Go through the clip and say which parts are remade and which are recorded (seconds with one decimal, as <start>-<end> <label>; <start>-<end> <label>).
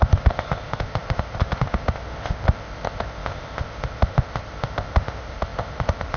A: 0.0-6.2 remade